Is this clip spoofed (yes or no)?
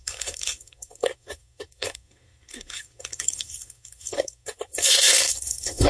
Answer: yes